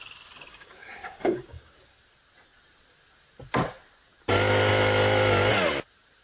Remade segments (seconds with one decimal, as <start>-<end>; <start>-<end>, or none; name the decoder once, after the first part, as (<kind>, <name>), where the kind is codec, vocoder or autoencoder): 0.5-1.7 (codec, DAC)